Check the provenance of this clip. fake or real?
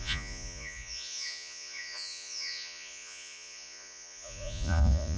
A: fake